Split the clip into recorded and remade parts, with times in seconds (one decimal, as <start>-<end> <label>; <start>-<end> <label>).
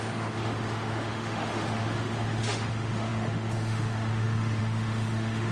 0.0-5.5 remade